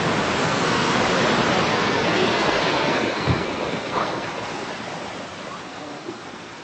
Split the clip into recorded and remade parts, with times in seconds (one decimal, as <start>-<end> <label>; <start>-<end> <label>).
0.0-0.4 recorded; 0.4-1.0 remade; 1.0-1.7 recorded; 1.7-4.7 remade; 4.7-5.6 recorded; 5.6-6.6 remade